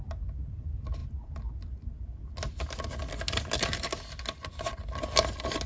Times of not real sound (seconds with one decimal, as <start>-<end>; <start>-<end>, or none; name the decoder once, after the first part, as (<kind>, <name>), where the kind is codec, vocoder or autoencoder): none